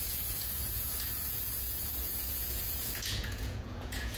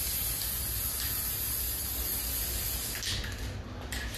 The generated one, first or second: first